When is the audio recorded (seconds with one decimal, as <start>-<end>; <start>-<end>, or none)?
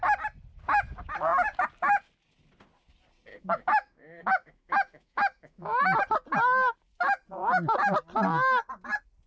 0.0-3.3; 5.8-9.3